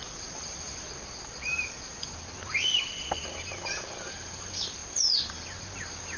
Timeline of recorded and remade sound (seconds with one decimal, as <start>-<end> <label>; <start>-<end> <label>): 0.0-3.7 remade; 3.7-6.2 recorded